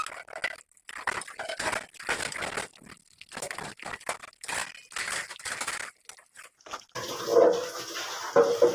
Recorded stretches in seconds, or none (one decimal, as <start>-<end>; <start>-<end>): 0.0-8.7